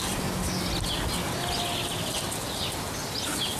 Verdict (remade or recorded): recorded